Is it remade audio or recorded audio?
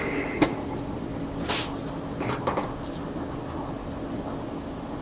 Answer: recorded